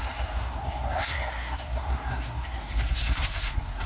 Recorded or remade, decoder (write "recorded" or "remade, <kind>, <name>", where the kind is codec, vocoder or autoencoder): remade, codec, SNAC